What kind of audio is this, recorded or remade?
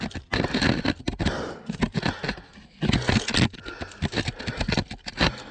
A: recorded